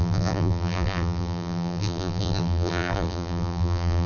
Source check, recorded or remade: remade